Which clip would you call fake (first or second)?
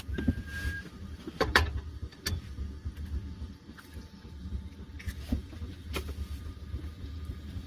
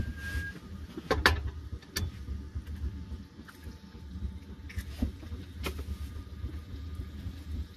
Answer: first